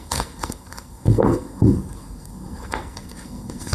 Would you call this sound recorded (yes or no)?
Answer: no